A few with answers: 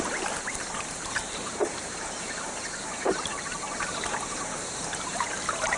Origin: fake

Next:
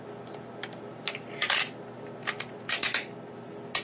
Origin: real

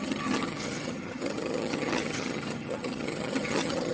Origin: fake